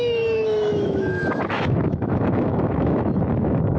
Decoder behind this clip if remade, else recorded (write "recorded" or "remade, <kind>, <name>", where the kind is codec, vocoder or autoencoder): remade, autoencoder, DAC-VAE